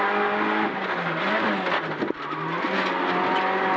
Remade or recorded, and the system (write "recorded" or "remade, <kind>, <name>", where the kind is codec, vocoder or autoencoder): recorded